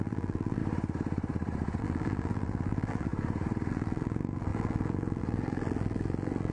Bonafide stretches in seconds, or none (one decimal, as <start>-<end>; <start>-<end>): 0.6-1.8; 3.1-3.7